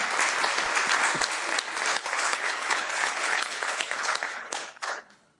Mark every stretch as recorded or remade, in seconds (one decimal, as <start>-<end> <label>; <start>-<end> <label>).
0.0-1.9 recorded; 1.9-5.4 remade